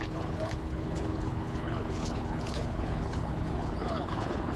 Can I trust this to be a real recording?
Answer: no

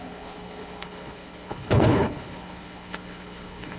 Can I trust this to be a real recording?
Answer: no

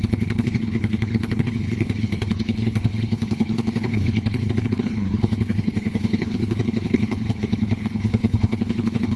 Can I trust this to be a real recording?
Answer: no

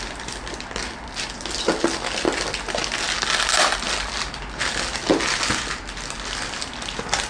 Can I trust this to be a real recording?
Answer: yes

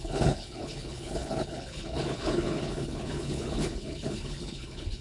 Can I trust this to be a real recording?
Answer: no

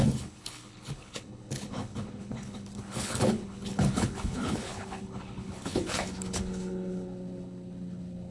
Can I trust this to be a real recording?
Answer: no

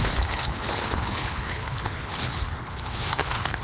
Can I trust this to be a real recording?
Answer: no